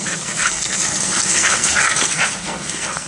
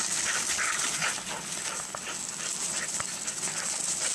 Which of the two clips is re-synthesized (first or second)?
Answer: first